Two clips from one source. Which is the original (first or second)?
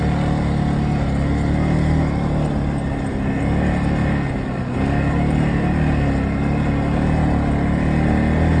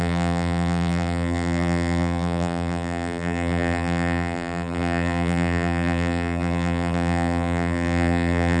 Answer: first